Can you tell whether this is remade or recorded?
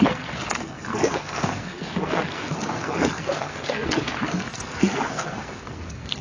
remade